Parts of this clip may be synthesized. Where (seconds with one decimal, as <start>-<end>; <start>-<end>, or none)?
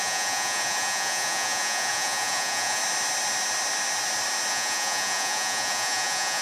0.0-2.8; 4.5-6.4